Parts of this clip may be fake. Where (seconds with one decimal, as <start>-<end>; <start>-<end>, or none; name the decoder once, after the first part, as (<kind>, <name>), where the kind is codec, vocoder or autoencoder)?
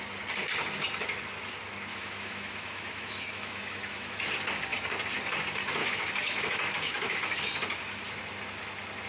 1.9-4.2 (autoencoder, DAC-VAE); 5.8-7.4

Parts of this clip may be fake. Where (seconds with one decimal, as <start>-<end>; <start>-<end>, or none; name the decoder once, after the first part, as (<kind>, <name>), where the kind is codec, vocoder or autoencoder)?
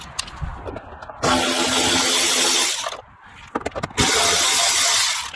none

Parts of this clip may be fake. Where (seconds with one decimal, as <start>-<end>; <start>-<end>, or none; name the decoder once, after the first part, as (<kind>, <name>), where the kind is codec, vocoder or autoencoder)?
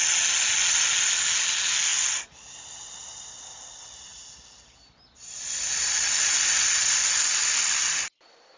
none